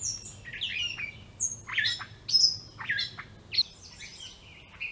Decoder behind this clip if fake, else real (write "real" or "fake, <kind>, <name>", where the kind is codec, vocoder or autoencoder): real